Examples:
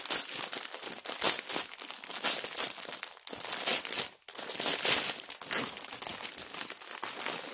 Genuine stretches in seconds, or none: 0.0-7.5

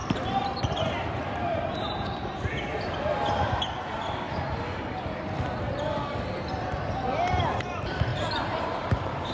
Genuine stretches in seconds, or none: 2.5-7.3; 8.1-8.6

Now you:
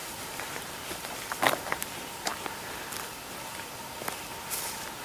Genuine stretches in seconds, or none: 2.3-5.0

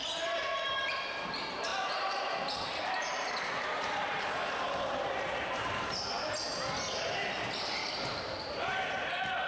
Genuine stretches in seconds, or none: 6.5-7.2; 8.8-9.5

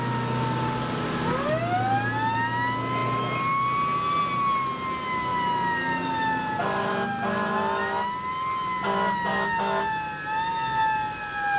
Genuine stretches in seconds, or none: 0.0-11.6

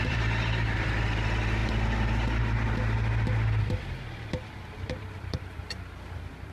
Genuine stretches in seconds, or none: none

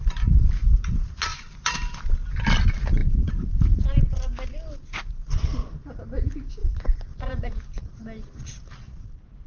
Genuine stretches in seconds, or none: 0.0-1.3; 2.0-6.6; 8.0-9.5